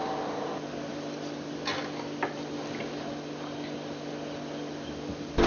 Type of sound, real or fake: real